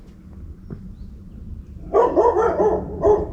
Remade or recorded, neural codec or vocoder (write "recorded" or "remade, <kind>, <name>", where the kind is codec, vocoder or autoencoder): recorded